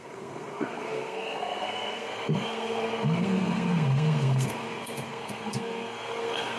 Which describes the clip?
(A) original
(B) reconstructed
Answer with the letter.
B